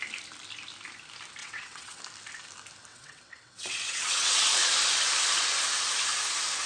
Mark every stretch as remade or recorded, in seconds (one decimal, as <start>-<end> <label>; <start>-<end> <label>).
0.0-1.4 recorded; 1.4-2.0 remade; 2.0-2.9 recorded; 2.9-4.7 remade; 4.7-6.7 recorded